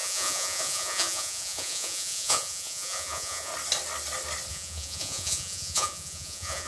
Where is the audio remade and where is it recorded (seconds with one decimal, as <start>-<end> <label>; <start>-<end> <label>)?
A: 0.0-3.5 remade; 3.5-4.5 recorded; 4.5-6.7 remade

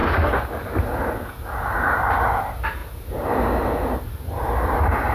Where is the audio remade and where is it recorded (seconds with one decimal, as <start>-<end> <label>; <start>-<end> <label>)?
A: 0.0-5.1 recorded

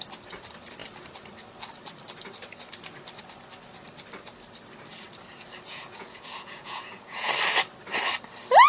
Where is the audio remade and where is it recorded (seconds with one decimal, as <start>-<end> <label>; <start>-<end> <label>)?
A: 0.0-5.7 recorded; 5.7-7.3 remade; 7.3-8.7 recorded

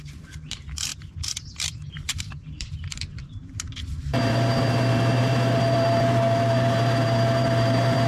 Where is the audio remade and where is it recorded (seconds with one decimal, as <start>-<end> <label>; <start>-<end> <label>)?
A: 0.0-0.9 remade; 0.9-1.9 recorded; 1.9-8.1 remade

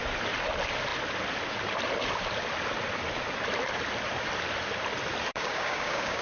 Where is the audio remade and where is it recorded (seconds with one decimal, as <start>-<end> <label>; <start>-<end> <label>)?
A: 0.0-5.3 recorded; 5.3-6.2 remade